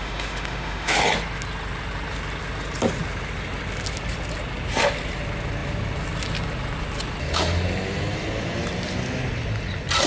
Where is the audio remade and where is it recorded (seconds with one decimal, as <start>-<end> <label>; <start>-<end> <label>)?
0.0-1.0 remade; 1.0-10.1 recorded